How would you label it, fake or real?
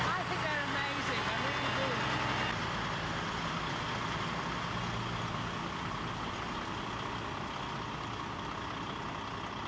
real